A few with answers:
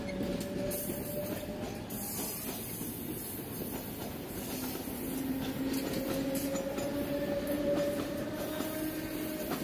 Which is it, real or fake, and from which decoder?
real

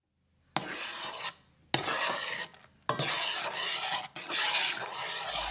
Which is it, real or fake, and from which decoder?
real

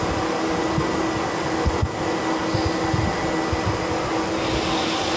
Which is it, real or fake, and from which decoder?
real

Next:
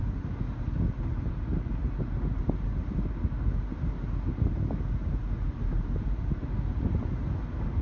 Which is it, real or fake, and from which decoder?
real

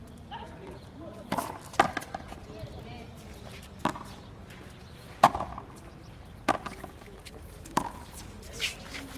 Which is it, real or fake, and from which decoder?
real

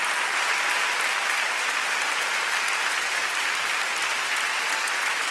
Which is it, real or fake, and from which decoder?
real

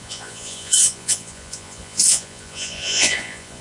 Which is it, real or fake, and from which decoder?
fake, vocoder, Vocos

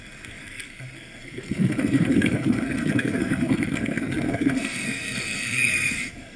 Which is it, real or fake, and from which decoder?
fake, codec, SNAC